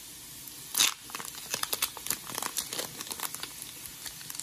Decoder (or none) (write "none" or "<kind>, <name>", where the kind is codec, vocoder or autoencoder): none